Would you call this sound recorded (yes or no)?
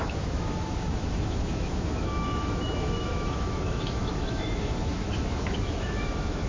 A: no